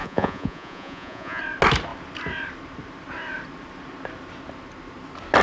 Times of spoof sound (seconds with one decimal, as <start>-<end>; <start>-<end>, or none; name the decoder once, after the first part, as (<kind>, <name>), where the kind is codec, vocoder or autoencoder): 0.0-1.4 (vocoder, Vocos)